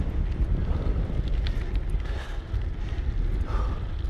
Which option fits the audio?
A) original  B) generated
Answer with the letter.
A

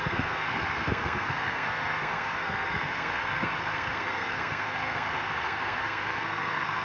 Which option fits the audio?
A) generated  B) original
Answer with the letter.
A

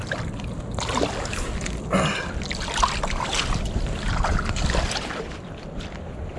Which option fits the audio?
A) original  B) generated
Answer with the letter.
A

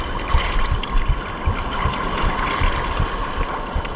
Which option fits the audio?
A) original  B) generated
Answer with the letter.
A